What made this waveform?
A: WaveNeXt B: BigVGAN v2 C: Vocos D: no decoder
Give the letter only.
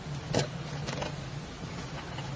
D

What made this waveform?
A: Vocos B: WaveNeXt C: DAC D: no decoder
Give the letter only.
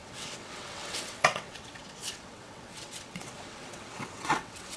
B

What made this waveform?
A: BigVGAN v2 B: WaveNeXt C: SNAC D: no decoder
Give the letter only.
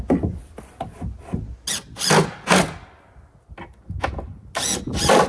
D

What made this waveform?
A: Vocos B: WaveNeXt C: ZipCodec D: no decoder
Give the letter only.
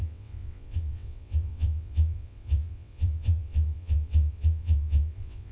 B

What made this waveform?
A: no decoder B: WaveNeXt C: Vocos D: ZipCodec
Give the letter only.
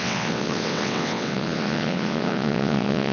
B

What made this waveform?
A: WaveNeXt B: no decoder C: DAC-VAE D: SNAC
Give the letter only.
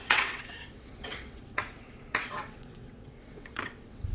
A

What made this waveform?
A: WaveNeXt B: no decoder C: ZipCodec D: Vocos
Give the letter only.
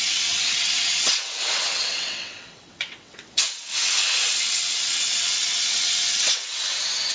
A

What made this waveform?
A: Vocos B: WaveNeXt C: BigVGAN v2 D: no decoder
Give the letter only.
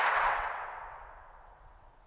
B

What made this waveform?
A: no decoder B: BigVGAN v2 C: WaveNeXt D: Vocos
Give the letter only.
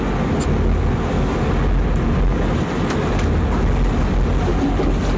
A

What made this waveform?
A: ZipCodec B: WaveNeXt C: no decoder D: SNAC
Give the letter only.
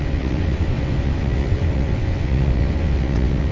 B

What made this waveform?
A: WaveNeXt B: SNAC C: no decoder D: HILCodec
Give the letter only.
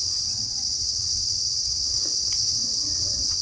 A